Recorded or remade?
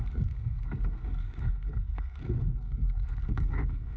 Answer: remade